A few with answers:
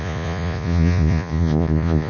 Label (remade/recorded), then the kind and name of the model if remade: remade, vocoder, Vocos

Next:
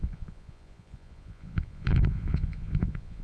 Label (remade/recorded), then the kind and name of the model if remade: remade, vocoder, Vocos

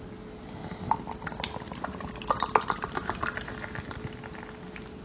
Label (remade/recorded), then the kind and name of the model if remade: recorded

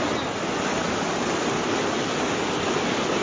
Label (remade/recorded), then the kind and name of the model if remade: recorded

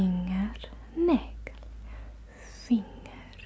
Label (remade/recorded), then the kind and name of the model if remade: recorded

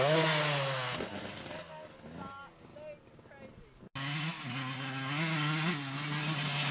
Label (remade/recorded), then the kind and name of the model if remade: recorded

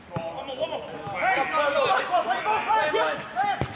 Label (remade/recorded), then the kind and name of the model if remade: recorded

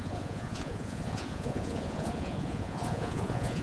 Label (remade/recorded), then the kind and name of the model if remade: remade, vocoder, Vocos